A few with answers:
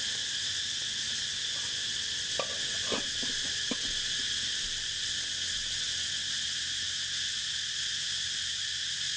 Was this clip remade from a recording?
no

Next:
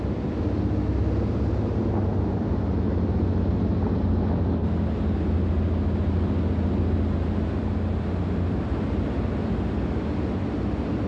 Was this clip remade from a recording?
no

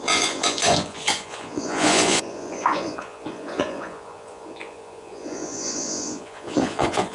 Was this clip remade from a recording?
yes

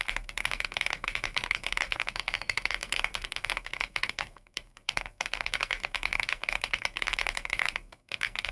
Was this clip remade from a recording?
yes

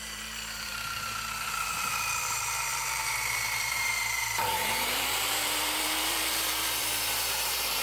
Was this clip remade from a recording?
yes